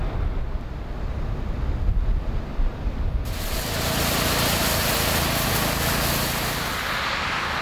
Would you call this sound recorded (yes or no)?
yes